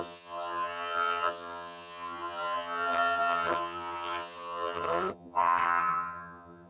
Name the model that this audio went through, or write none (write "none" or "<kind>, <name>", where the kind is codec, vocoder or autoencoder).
vocoder, HiFi-GAN